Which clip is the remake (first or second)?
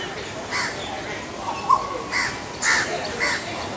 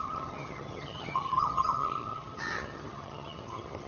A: second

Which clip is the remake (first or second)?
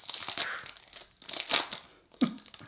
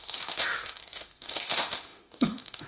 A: second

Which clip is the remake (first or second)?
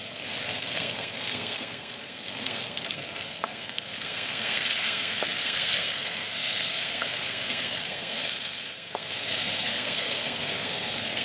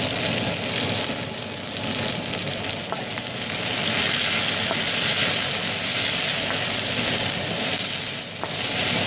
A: first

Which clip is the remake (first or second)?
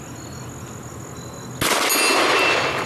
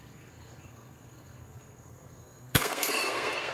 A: second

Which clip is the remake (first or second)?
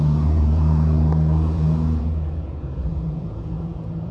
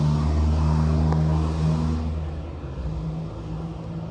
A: first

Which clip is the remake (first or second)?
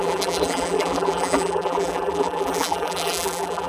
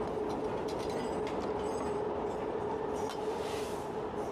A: first